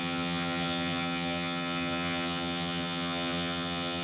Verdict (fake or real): fake